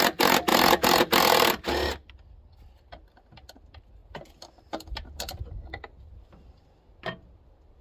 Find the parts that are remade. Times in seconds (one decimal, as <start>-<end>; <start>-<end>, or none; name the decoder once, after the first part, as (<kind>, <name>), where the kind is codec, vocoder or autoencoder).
none